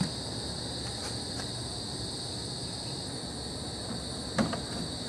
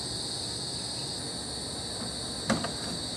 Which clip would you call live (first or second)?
second